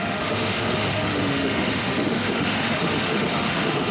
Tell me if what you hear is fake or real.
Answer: fake